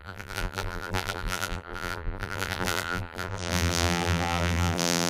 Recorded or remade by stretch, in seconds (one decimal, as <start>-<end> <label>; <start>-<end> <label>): 0.0-5.1 remade